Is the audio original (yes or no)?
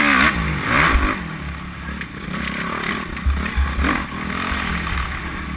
yes